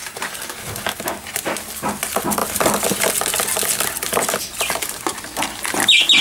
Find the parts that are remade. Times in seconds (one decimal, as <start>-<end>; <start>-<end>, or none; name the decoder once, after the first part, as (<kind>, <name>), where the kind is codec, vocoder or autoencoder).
none

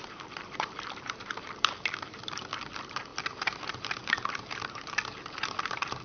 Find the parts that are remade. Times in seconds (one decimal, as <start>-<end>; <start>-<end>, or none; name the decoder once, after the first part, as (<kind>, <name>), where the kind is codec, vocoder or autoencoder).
0.0-6.0 (vocoder, BigVGAN v2)

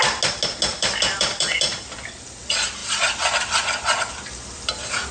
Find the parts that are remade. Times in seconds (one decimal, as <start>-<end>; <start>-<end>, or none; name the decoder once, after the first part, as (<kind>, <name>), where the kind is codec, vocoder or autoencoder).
0.7-1.8 (vocoder, BigVGAN v2); 2.8-4.6

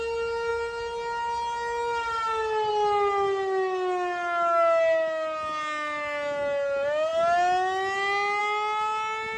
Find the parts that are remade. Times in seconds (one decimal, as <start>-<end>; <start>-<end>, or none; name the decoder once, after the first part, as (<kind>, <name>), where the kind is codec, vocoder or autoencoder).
none